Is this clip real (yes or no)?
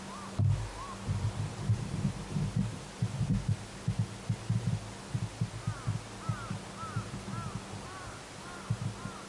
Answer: yes